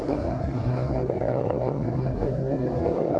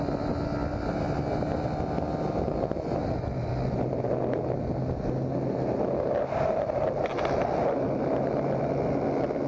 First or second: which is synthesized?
first